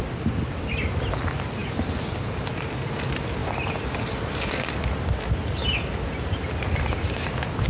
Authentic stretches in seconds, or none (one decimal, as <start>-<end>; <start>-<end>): 0.0-7.7